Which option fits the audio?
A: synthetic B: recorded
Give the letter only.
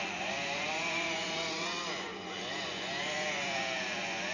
A